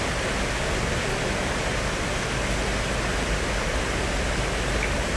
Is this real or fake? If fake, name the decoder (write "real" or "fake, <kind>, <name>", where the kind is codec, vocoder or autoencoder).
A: real